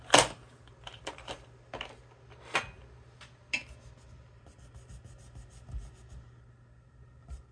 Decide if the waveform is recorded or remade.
recorded